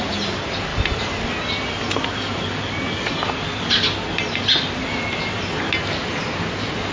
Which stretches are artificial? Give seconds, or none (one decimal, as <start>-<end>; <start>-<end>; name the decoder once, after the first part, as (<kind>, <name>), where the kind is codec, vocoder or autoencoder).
none